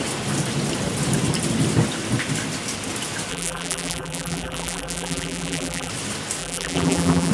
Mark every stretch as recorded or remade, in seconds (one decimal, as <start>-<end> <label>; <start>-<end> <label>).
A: 0.0-3.3 recorded; 3.3-5.9 remade; 5.9-6.4 recorded; 6.4-7.3 remade